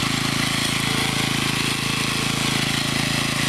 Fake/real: real